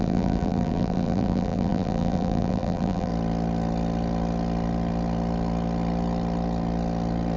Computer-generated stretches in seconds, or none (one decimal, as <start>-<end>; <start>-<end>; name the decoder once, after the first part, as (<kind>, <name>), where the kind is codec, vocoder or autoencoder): 0.0-3.1 (vocoder, BigVGAN v2)